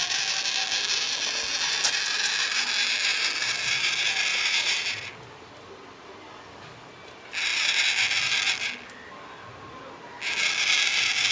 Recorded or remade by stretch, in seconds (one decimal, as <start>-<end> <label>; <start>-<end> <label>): 0.0-4.3 recorded; 4.3-5.5 remade; 5.5-11.3 recorded